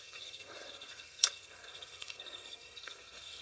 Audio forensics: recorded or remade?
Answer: remade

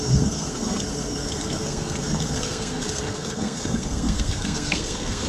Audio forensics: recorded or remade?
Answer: remade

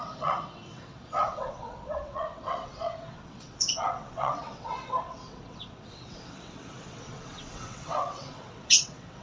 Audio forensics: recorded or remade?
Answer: remade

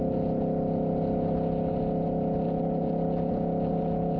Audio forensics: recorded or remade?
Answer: recorded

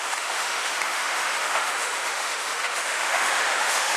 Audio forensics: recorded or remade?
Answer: remade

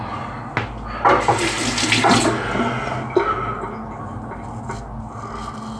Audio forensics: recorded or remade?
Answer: recorded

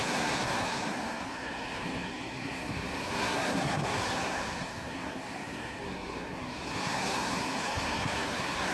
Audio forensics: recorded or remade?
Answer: remade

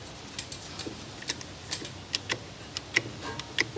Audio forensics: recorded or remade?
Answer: recorded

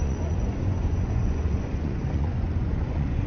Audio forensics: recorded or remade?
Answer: remade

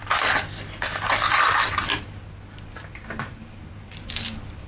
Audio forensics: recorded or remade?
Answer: recorded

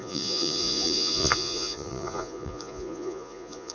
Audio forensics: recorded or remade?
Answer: remade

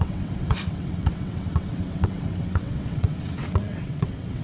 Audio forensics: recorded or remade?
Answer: remade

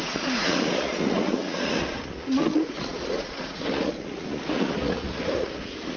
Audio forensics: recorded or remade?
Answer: remade